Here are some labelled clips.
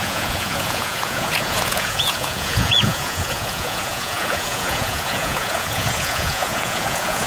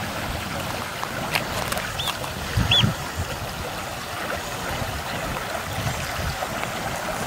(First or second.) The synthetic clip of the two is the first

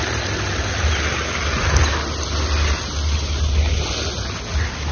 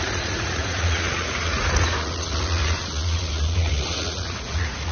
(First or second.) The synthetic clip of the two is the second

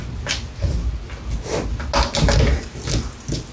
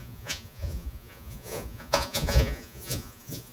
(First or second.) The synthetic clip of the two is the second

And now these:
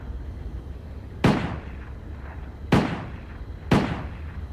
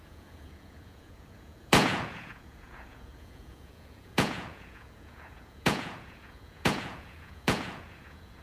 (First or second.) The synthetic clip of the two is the second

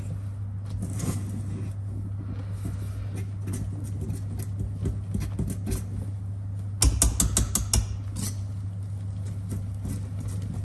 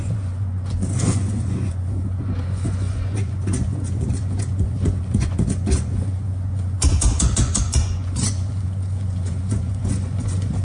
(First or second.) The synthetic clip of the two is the second